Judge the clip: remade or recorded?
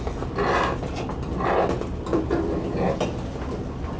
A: recorded